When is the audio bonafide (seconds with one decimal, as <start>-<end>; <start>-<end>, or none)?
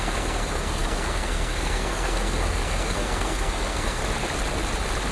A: 4.0-5.1